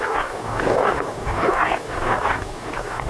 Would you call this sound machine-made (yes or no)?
yes